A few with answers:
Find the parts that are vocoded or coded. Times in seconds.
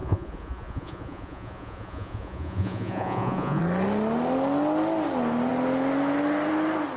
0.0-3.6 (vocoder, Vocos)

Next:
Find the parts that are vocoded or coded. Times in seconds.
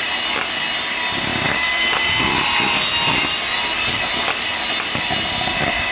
none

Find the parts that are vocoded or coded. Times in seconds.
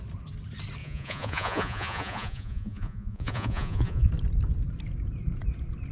0.8-4.1 (vocoder, Vocos)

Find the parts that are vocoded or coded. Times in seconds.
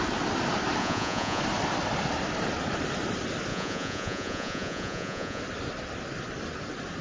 0.8-1.4 (vocoder, Vocos); 3.5-5.4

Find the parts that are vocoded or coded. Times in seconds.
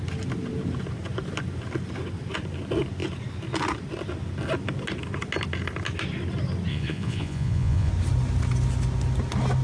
6.7-7.9 (vocoder, Vocos)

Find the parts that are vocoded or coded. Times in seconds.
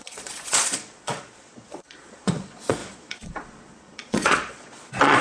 0.0-5.2 (vocoder, Vocos)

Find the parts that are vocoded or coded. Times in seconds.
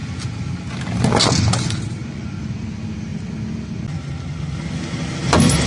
2.0-2.7 (vocoder, Vocos)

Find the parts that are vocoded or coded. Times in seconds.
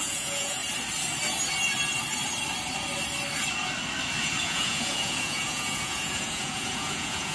0.0-0.6 (vocoder, Vocos); 4.2-7.3